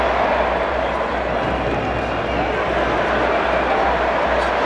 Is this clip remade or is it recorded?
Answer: recorded